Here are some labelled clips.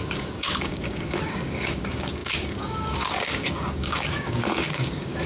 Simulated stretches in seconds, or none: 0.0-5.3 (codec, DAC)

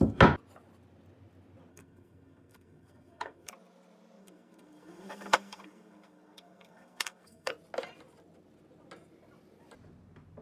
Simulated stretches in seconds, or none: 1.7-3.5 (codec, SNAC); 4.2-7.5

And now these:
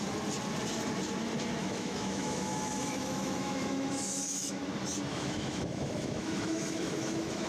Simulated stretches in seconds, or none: 1.6-4.6 (autoencoder, DAC-VAE); 5.1-7.5

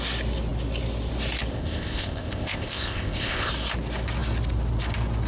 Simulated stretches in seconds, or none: 1.5-3.5 (codec, ZipCodec)

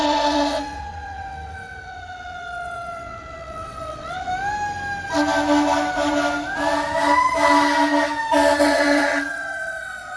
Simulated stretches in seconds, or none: 0.0-4.3 (vocoder, WaveNeXt); 8.6-10.2